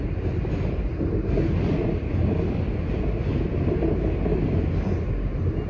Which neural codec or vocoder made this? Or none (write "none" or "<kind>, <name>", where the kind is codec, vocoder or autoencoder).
none